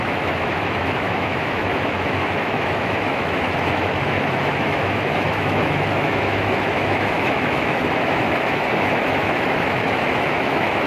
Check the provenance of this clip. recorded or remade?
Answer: remade